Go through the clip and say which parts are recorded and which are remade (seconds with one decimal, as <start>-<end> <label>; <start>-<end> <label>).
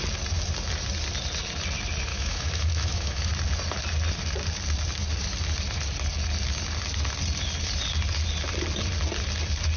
0.0-2.1 recorded; 2.1-3.3 remade; 3.3-9.8 recorded